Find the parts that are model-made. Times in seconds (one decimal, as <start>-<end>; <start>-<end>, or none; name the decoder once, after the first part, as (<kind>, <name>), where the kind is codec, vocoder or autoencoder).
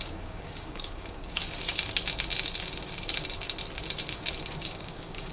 0.0-1.4 (codec, DAC); 4.6-5.3